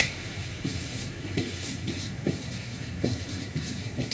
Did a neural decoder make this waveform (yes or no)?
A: yes